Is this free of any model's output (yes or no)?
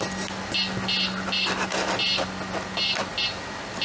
yes